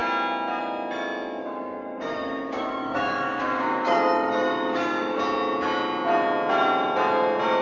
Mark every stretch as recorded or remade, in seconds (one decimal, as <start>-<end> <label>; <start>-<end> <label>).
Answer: 0.0-1.4 recorded; 1.4-5.2 remade; 5.2-7.6 recorded